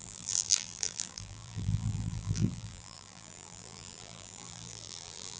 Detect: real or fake fake